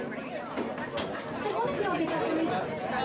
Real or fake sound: real